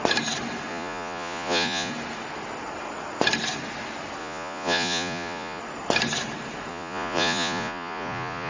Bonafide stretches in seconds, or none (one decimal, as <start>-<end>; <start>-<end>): 0.0-0.7; 1.9-4.2; 5.6-6.7